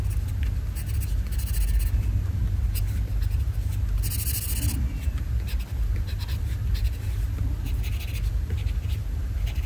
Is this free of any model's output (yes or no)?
yes